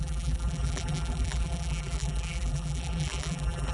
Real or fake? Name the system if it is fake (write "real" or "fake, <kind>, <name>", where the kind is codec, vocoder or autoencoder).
fake, vocoder, BigVGAN v2